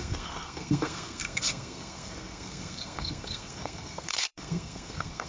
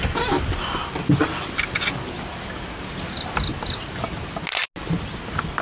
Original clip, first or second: second